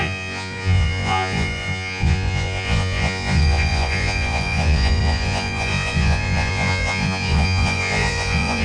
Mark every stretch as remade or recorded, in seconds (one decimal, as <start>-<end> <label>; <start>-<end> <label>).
0.0-8.6 remade